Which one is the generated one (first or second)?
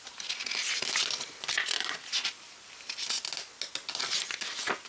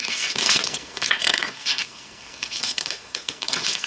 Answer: second